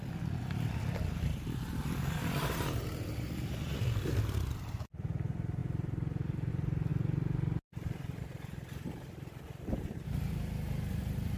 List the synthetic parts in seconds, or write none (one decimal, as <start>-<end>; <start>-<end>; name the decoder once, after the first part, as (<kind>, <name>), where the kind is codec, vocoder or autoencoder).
0.0-6.9 (vocoder, BigVGAN v2); 8.2-11.4